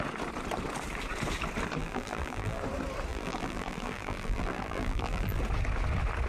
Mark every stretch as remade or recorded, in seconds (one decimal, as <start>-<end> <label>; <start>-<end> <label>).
0.0-1.8 recorded; 1.8-2.6 remade; 2.6-3.1 recorded; 3.1-5.4 remade; 5.4-6.3 recorded